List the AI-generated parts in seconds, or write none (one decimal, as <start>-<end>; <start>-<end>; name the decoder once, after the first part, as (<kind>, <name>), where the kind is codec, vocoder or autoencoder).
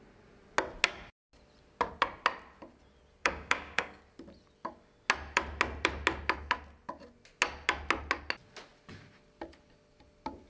3.2-4.0 (codec, DAC)